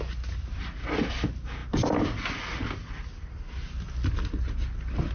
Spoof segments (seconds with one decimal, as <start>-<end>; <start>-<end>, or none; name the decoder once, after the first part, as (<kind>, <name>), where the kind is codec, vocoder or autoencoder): none

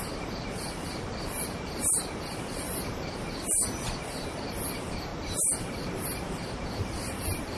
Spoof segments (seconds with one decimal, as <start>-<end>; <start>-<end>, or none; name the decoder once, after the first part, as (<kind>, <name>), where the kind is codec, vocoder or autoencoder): 0.0-5.1 (vocoder, BigVGAN v2); 5.6-7.6

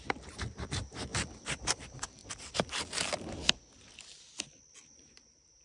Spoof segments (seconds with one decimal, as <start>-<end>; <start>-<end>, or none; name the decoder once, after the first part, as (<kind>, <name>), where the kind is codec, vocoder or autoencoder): 0.0-2.2 (vocoder, BigVGAN v2); 4.9-5.6

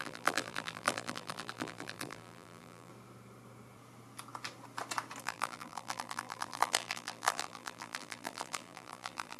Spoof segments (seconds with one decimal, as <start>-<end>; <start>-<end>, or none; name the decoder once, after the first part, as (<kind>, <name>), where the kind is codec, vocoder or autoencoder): 0.0-2.9 (vocoder, BigVGAN v2); 5.2-9.4

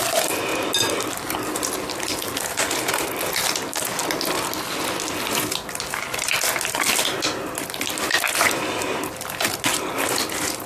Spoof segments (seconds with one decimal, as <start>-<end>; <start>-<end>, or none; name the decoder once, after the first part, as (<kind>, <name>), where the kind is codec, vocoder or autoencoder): none

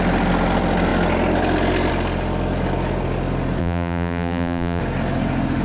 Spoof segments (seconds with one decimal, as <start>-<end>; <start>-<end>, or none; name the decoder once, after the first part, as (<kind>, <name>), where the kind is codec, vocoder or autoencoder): 3.6-4.8 (vocoder, BigVGAN v2)

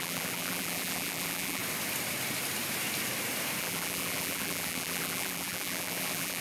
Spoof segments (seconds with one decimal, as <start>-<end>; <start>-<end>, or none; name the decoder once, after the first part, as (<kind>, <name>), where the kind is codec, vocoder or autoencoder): 0.0-1.6 (vocoder, BigVGAN v2); 3.6-6.4

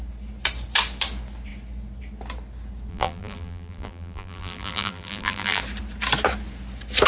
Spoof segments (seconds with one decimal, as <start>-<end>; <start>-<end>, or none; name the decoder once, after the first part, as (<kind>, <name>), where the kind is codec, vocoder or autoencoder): 2.9-5.6 (vocoder, BigVGAN v2)